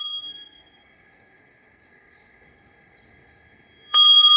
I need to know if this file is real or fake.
fake